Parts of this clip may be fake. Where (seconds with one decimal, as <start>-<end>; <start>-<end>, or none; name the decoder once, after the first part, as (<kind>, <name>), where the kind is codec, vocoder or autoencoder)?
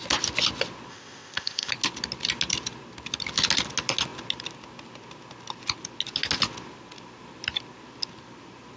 0.9-1.7 (codec, ZipCodec)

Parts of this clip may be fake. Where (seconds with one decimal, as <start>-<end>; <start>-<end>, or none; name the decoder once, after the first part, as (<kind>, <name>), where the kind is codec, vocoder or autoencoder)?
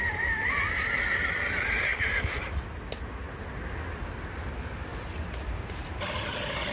none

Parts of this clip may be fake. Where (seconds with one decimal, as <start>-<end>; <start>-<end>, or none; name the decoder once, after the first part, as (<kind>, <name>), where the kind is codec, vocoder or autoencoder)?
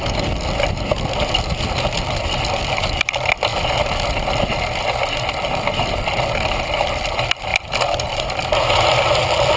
none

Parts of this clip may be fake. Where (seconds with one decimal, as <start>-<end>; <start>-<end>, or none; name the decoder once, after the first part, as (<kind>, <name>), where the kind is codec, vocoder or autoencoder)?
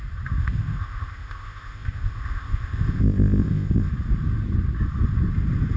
0.4-3.9 (codec, ZipCodec)